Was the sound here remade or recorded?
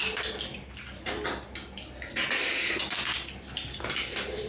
recorded